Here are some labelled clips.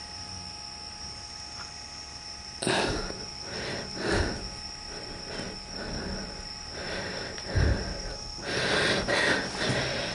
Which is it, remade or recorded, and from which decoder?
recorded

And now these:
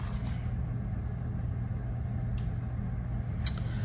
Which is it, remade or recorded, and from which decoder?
recorded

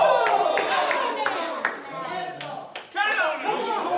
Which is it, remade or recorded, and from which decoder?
recorded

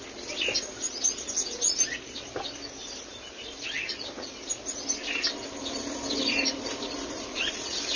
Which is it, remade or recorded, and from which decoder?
recorded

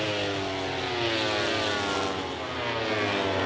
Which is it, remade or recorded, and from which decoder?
recorded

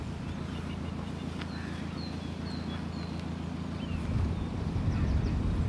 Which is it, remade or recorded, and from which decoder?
recorded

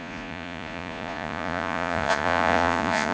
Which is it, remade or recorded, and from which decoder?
remade, vocoder, Vocos